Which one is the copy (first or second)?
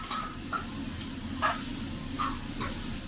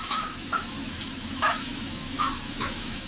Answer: second